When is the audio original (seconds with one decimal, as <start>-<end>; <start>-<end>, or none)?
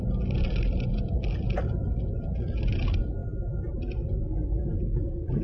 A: 0.0-5.4